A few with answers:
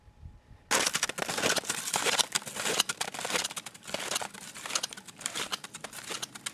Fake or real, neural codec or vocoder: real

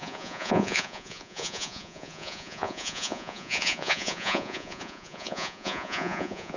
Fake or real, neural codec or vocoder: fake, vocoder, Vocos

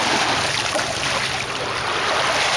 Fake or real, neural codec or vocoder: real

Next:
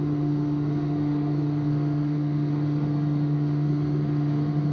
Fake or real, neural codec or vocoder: fake, codec, SNAC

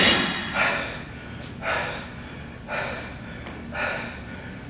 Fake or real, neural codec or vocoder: real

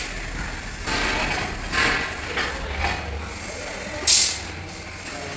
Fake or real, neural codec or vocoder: real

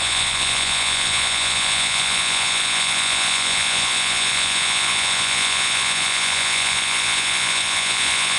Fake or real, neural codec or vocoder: fake, vocoder, Vocos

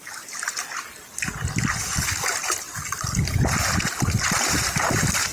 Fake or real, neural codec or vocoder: real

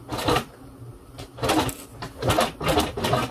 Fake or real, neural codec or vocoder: real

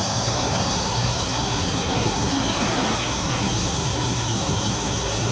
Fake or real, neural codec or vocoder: fake, codec, SNAC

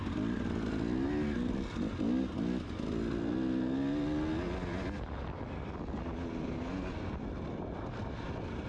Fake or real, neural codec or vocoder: real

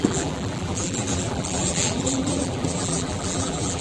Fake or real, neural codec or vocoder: fake, vocoder, BigVGAN v2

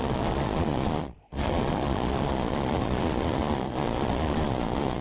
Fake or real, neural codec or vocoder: fake, vocoder, Vocos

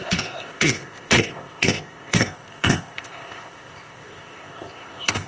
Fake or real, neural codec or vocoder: fake, codec, ZipCodec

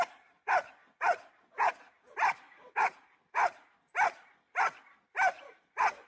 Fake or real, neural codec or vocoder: real